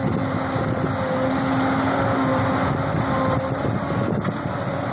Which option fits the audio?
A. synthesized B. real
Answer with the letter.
B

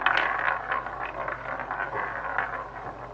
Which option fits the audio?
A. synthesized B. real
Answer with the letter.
B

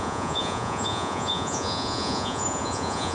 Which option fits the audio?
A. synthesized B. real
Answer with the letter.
A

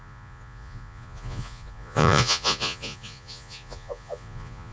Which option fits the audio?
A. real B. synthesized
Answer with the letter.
B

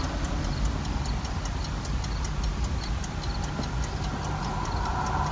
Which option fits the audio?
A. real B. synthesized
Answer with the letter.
A